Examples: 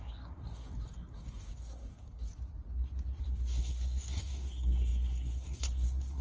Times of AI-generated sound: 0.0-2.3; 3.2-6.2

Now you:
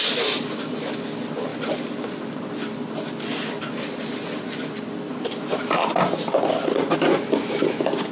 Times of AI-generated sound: none